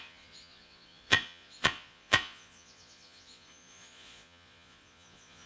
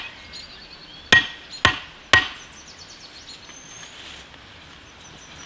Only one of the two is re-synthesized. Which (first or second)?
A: first